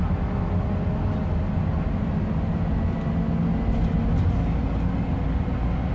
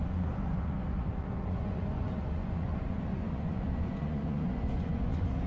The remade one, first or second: second